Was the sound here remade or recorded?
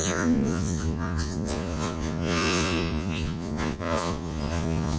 remade